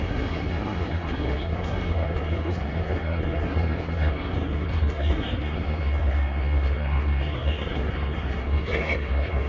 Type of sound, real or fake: fake